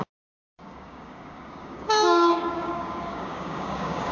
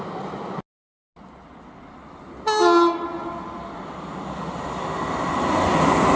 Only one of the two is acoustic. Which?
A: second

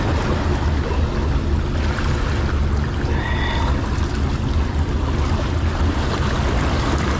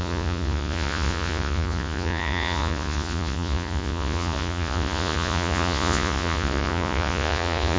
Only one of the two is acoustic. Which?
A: first